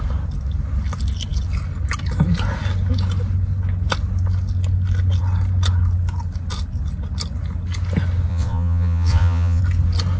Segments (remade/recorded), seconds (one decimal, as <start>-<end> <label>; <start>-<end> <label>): 0.0-8.3 recorded; 8.3-9.6 remade; 9.6-10.2 recorded